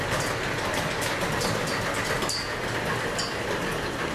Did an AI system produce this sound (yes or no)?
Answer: no